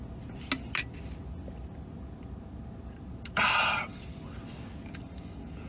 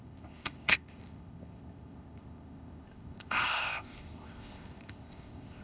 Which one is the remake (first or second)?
second